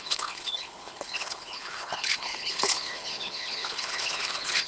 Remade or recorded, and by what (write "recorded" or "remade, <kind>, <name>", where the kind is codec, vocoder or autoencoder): remade, codec, HILCodec